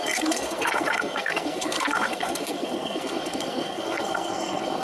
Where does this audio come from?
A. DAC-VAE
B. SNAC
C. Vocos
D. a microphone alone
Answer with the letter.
B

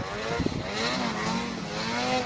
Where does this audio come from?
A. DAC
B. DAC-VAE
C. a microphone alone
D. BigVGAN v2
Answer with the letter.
C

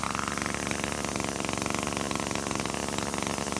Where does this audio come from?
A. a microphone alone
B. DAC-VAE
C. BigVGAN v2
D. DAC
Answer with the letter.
A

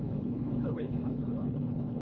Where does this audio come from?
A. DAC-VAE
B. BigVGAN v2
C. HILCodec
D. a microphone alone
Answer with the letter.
C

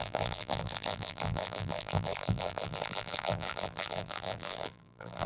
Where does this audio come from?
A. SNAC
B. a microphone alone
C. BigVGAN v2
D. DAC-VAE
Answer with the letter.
C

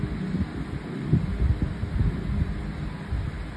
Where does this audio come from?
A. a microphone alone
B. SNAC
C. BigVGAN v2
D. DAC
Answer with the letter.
A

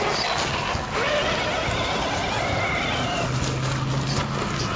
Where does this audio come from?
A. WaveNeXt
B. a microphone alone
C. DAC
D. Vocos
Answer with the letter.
B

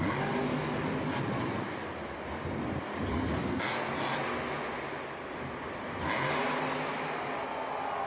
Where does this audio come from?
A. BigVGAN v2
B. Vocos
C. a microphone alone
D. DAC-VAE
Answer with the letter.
C